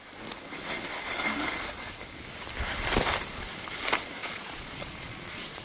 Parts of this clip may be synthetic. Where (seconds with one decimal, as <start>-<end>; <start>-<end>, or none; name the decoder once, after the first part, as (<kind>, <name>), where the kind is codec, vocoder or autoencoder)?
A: 4.2-5.6 (vocoder, Vocos)